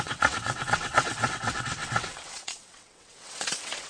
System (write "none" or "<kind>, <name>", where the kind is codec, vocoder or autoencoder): vocoder, WaveNeXt